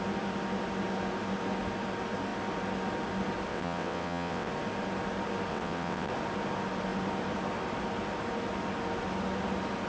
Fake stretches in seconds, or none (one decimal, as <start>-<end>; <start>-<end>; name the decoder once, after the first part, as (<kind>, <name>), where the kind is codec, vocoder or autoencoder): 3.5-4.5 (vocoder, WaveNeXt); 5.5-6.1